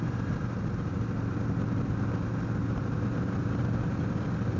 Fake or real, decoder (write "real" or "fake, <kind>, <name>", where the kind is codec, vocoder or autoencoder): real